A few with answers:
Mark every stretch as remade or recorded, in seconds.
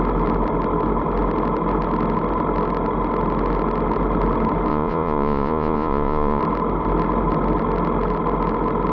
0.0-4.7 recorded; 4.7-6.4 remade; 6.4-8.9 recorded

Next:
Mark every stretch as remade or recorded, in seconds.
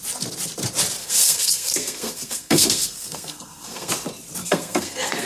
0.0-1.0 recorded; 1.0-3.9 remade; 3.9-4.4 recorded; 4.4-5.3 remade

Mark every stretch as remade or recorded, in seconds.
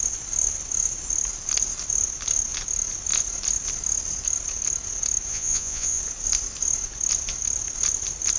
0.0-5.3 recorded; 5.3-6.0 remade; 6.0-8.4 recorded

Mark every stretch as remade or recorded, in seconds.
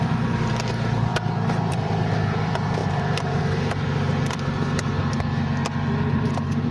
0.0-1.1 remade; 1.1-1.7 recorded; 1.7-5.0 remade; 5.0-5.8 recorded; 5.8-6.7 remade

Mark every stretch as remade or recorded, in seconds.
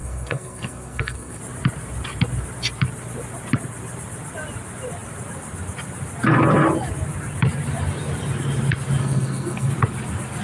0.0-1.4 remade; 1.4-9.0 recorded; 9.0-9.7 remade; 9.7-10.4 recorded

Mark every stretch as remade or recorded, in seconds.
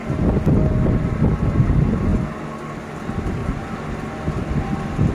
0.0-1.1 recorded; 1.1-2.1 remade; 2.1-3.0 recorded; 3.0-3.4 remade; 3.4-5.1 recorded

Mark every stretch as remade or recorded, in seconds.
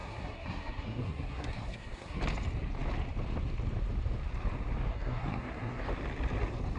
0.0-2.2 remade; 2.2-4.9 recorded; 4.9-5.8 remade; 5.8-6.8 recorded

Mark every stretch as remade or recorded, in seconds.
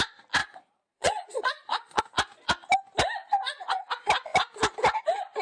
0.0-0.4 recorded; 0.4-2.0 remade; 2.0-3.2 recorded; 3.2-3.8 remade; 3.8-5.4 recorded